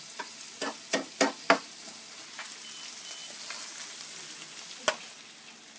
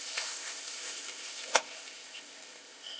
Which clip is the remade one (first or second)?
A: second